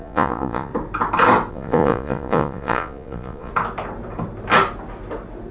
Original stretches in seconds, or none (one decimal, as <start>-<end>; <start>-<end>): 0.7-1.5; 3.5-5.5